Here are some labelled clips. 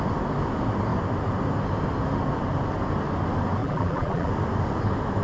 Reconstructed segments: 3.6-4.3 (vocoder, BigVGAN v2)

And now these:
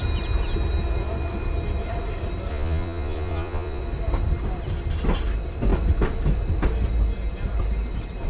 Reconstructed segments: 2.5-3.8 (vocoder, Vocos)

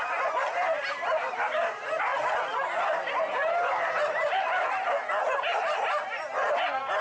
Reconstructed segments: none

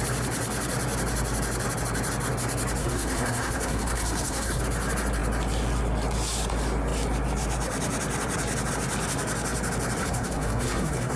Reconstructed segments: 2.8-4.6 (codec, SNAC); 10.0-11.2